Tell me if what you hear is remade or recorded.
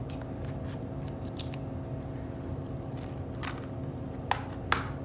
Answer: recorded